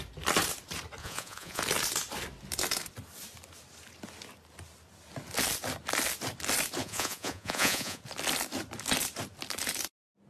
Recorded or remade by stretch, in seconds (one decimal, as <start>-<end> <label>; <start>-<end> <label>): 0.0-1.0 recorded; 1.0-1.6 remade; 1.6-6.8 recorded; 6.8-8.0 remade; 8.0-10.3 recorded